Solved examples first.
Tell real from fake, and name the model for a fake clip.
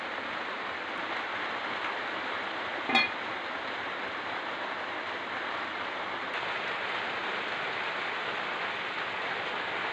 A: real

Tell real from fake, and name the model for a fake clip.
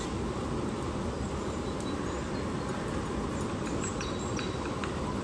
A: real